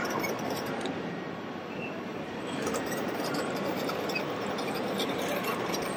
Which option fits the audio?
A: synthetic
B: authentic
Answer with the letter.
A